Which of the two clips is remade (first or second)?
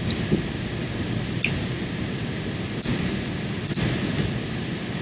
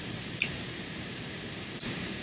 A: second